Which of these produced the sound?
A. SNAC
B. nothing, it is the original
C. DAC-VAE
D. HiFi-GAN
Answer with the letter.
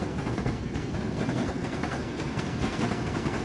A